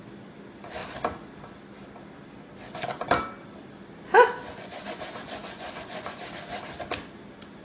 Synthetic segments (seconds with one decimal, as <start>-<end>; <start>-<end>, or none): 4.4-5.0; 5.4-6.2